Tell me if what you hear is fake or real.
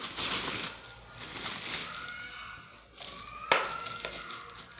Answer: real